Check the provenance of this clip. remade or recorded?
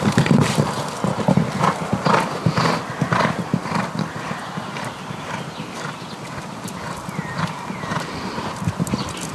recorded